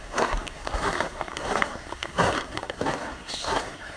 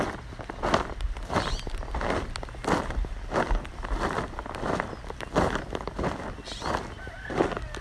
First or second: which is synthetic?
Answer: first